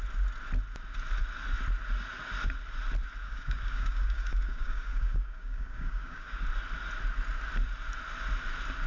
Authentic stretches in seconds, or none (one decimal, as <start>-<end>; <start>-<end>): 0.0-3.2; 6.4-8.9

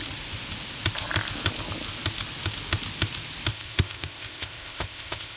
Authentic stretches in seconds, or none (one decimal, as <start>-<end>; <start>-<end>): 0.0-3.5

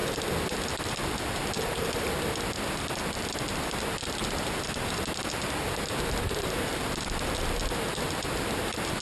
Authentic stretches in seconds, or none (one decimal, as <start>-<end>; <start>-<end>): 0.0-9.0

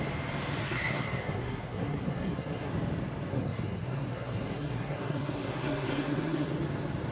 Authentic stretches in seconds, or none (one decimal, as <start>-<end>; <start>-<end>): 0.0-0.6; 2.7-3.3; 6.5-7.1